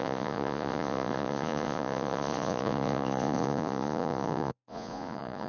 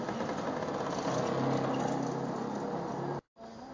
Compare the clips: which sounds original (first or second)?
second